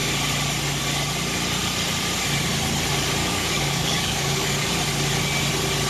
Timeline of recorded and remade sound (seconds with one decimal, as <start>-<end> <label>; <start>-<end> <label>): 0.0-3.2 recorded; 3.2-4.7 remade; 4.7-5.9 recorded